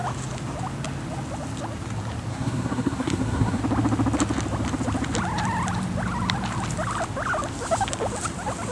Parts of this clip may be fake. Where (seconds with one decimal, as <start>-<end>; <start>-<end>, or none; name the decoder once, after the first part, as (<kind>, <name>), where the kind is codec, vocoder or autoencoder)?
2.3-3.6 (codec, SNAC)